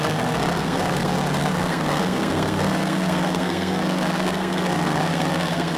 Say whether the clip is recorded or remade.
remade